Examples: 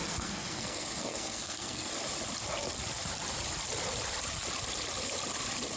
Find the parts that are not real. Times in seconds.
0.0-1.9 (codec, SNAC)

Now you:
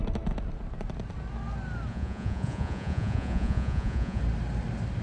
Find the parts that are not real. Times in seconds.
1.9-4.2 (vocoder, Vocos)

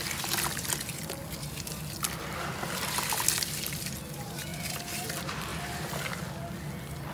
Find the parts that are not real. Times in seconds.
none